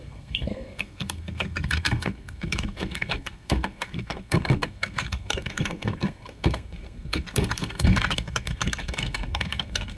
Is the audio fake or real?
fake